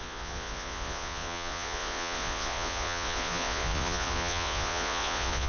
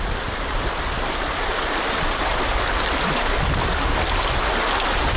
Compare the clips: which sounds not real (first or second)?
first